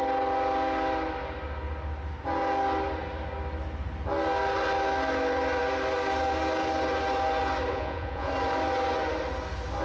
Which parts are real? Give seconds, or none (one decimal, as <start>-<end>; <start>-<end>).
0.0-7.7; 8.3-9.8